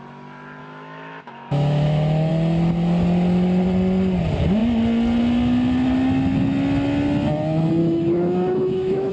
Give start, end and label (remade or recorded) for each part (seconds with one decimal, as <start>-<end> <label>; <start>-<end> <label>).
0.0-0.6 recorded; 0.6-2.3 remade; 2.3-7.8 recorded; 7.8-9.1 remade